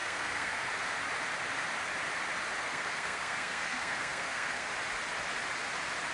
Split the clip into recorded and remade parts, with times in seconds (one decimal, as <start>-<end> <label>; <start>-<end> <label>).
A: 0.0-0.7 remade; 0.7-2.6 recorded; 2.6-4.7 remade; 4.7-6.1 recorded